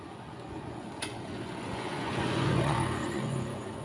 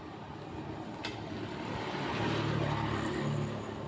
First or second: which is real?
second